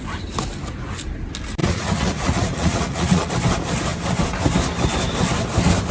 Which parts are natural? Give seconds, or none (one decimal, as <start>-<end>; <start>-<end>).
0.0-1.6; 3.3-5.9